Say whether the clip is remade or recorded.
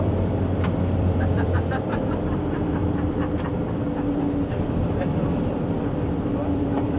remade